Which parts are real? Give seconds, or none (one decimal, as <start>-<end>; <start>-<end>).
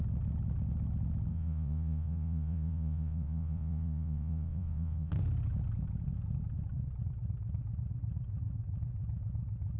0.0-1.3; 5.1-9.8